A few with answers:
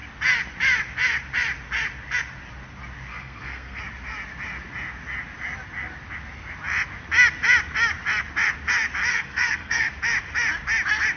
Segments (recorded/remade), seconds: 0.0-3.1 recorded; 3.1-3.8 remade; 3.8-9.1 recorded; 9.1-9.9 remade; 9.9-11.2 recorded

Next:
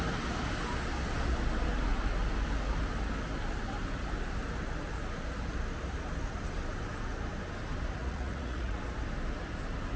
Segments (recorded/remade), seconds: 0.0-8.0 recorded; 8.0-8.8 remade; 8.8-10.0 recorded

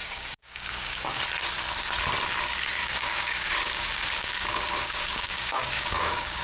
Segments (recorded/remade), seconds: 0.0-1.2 remade; 1.2-2.8 recorded; 2.8-6.4 remade